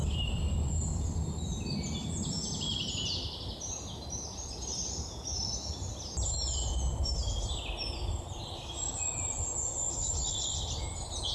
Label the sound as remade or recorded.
recorded